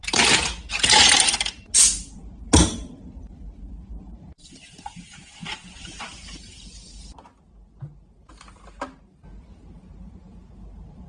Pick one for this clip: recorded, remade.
recorded